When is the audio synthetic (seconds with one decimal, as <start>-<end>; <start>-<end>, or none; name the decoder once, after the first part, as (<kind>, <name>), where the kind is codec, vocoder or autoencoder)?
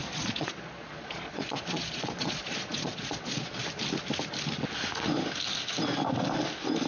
0.0-3.6 (vocoder, Vocos)